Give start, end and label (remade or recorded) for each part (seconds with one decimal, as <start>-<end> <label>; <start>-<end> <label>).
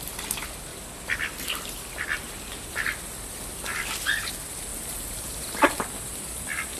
0.0-0.7 recorded; 0.7-4.3 remade; 4.3-4.7 recorded; 4.7-5.8 remade; 5.8-6.8 recorded